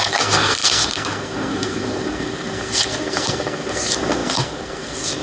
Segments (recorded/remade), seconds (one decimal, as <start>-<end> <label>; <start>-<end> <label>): 0.0-5.2 remade